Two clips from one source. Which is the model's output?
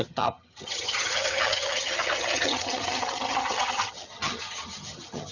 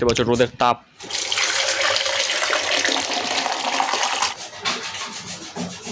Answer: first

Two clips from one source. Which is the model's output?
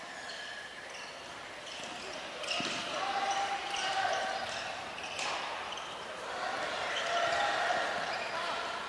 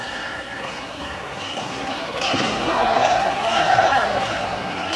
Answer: second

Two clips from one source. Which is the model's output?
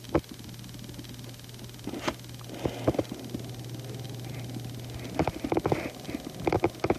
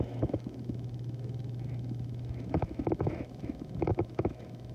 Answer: second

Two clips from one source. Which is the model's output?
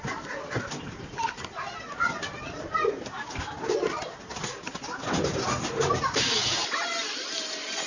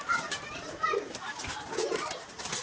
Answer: second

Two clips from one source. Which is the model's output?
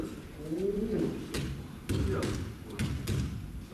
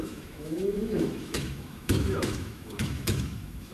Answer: second